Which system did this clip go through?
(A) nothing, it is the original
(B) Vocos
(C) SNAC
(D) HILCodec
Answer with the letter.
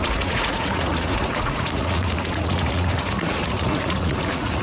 B